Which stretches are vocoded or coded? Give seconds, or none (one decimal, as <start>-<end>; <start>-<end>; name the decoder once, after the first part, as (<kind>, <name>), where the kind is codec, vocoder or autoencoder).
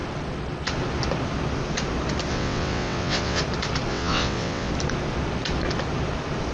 2.3-3.4 (vocoder, WaveNeXt); 3.9-4.7